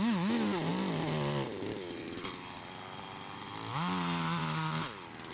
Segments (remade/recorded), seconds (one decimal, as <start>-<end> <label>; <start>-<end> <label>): 0.0-5.3 recorded